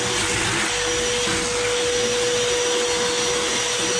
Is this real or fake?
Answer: real